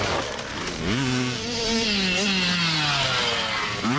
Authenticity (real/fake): real